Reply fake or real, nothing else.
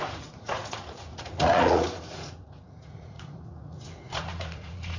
fake